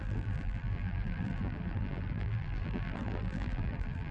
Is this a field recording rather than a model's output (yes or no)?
no